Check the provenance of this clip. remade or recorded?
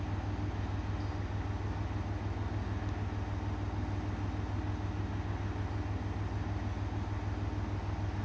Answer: recorded